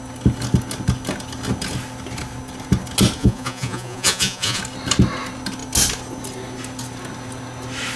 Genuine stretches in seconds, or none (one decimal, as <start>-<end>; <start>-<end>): 0.0-3.2; 4.6-8.0